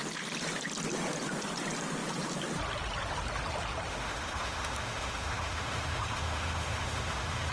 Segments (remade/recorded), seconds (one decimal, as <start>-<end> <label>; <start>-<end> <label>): 0.0-3.9 recorded; 3.9-7.5 remade